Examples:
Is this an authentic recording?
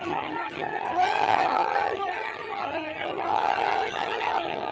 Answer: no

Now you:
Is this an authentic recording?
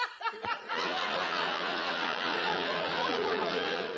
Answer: no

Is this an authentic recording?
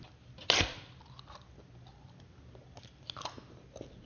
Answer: yes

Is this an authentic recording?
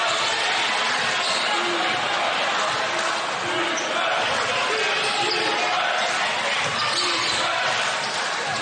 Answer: yes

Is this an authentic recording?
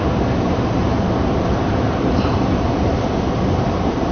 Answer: no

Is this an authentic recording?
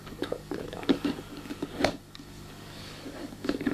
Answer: no